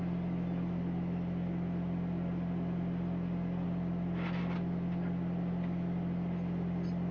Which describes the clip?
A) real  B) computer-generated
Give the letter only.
A